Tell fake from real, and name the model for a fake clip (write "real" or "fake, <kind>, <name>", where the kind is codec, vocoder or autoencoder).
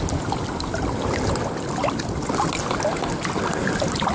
real